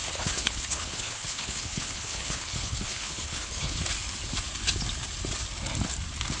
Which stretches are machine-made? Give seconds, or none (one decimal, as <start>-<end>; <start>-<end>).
0.0-3.8